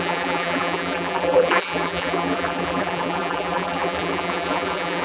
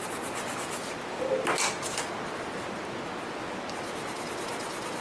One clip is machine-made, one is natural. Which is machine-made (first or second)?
first